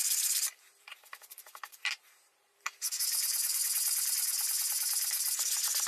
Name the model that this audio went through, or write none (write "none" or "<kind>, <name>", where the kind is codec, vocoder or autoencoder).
vocoder, BigVGAN v2